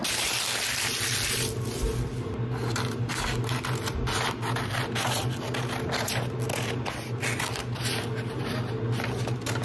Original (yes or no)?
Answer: yes